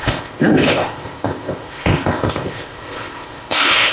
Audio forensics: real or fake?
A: fake